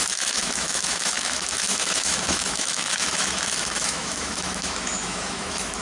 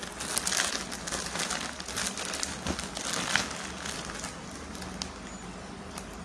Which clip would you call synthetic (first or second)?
first